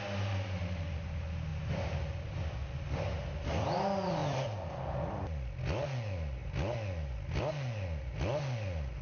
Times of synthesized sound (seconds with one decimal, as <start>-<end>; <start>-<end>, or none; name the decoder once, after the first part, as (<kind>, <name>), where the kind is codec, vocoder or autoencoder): none